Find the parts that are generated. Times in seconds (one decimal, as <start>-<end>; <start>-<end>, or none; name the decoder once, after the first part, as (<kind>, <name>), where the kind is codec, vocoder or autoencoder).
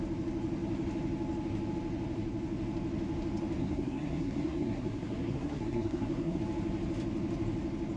3.6-6.4 (codec, SNAC)